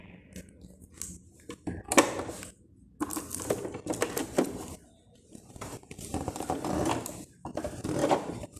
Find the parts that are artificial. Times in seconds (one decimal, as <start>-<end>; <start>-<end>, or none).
4.2-6.9; 8.0-8.6